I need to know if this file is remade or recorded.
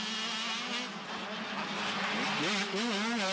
recorded